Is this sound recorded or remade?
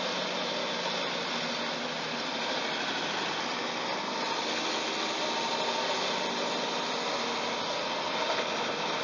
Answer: recorded